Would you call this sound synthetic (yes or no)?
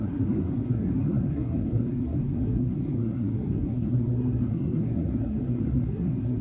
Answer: yes